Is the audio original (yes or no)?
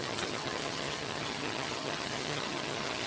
no